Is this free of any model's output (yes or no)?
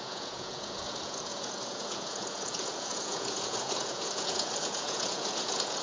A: no